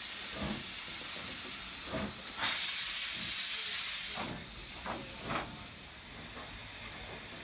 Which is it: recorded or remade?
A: recorded